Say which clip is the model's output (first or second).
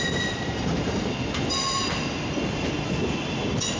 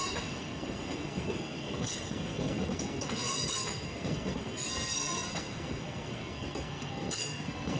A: second